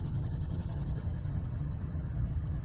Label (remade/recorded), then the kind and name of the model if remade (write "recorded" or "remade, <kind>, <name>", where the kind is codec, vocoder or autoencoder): remade, vocoder, HiFi-GAN